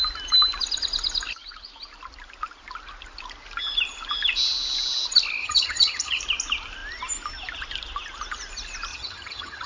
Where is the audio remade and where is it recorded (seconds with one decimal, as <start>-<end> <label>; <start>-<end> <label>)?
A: 0.0-5.4 recorded; 5.4-6.2 remade; 6.2-8.9 recorded; 8.9-9.7 remade